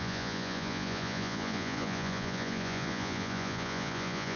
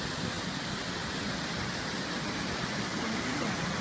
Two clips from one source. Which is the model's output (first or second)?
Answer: first